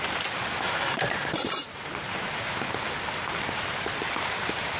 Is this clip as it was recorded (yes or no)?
yes